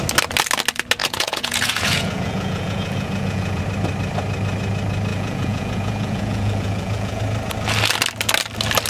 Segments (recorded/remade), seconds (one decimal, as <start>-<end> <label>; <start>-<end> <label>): 0.0-1.0 recorded; 1.0-3.6 remade; 3.6-5.1 recorded; 5.1-7.2 remade; 7.2-8.9 recorded

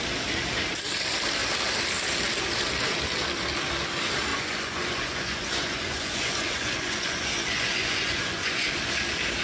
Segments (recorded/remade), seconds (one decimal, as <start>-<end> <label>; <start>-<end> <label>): 0.0-4.3 recorded; 4.3-8.7 remade; 8.7-9.4 recorded

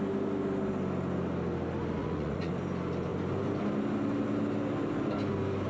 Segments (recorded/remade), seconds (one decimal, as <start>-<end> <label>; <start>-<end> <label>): 0.0-2.0 recorded; 2.0-2.5 remade; 2.5-5.7 recorded

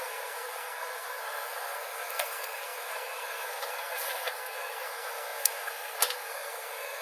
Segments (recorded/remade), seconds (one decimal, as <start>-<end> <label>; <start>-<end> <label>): 0.0-7.0 remade

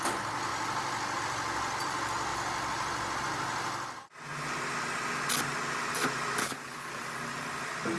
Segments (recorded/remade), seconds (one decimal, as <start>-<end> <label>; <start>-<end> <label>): 0.0-6.4 recorded; 6.4-6.9 remade; 6.9-8.0 recorded

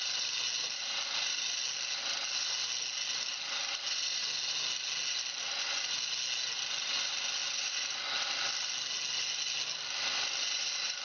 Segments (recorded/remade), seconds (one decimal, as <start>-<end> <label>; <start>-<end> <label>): 0.0-11.0 recorded

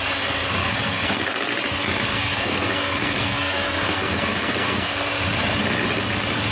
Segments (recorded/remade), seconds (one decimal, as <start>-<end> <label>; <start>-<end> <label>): 0.0-0.6 recorded; 0.6-1.5 remade; 1.5-2.1 recorded; 2.1-5.0 remade; 5.0-6.5 recorded

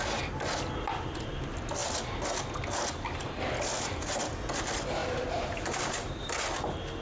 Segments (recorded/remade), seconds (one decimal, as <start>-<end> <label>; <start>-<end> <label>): 0.0-5.0 recorded; 5.0-6.3 remade; 6.3-7.0 recorded